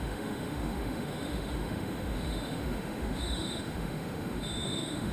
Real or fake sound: fake